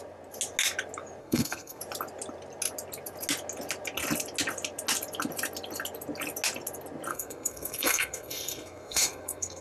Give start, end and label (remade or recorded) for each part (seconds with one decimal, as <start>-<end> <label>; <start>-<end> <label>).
0.0-1.2 recorded; 1.2-1.8 remade; 1.8-7.1 recorded; 7.1-9.6 remade

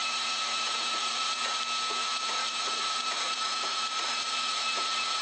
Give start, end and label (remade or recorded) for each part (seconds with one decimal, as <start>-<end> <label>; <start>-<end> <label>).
0.0-1.6 remade; 1.6-2.0 recorded; 2.0-5.2 remade

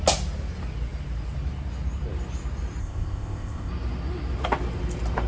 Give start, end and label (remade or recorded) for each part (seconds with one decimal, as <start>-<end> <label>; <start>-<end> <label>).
0.0-2.8 recorded; 2.8-3.7 remade; 3.7-5.3 recorded

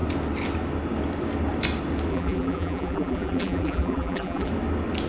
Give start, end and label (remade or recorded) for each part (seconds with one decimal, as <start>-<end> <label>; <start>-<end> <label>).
0.0-2.1 recorded; 2.1-4.5 remade; 4.5-5.1 recorded

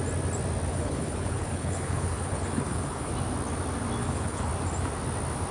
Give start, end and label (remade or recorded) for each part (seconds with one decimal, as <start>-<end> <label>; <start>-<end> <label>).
0.0-0.7 recorded; 0.7-3.1 remade; 3.1-4.0 recorded; 4.0-4.5 remade; 4.5-5.5 recorded

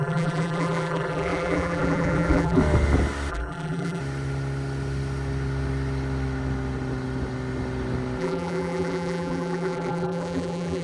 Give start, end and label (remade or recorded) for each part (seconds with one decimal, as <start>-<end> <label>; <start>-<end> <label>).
0.0-2.6 remade; 2.6-3.3 recorded; 3.3-4.0 remade; 4.0-8.2 recorded; 8.2-10.8 remade

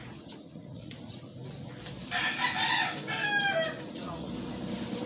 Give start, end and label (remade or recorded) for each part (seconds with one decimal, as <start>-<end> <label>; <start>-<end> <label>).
0.0-1.3 remade; 1.3-3.9 recorded; 3.9-4.3 remade; 4.3-5.1 recorded